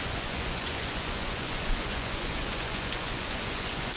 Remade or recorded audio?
remade